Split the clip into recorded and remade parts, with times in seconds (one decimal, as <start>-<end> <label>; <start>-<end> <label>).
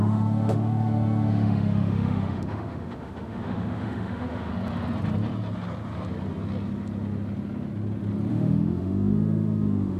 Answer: 0.0-4.5 remade; 4.5-8.3 recorded; 8.3-10.0 remade